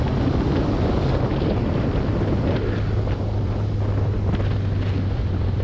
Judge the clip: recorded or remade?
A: recorded